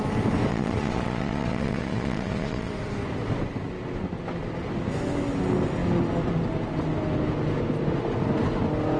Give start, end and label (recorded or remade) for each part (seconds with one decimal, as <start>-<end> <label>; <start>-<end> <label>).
0.0-0.5 recorded; 0.5-2.7 remade; 2.7-9.0 recorded